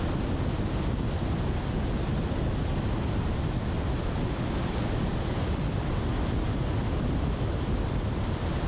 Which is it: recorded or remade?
recorded